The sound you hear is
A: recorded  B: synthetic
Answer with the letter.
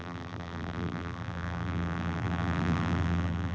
B